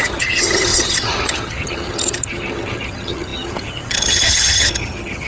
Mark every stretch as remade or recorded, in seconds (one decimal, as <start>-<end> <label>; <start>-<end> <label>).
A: 0.0-5.3 remade